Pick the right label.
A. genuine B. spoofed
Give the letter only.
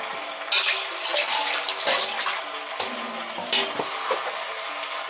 A